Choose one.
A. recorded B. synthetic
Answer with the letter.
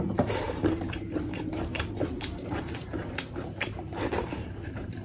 B